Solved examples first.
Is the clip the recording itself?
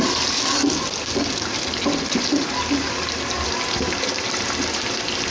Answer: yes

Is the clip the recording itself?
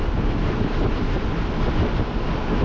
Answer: yes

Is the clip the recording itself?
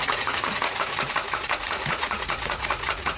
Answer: no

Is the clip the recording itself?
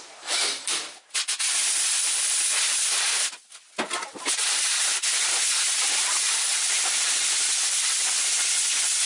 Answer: yes